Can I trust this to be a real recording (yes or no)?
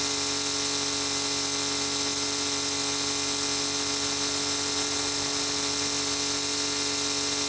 yes